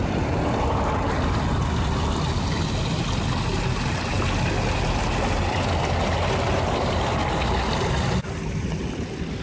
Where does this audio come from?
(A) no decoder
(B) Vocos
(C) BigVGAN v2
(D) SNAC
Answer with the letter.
A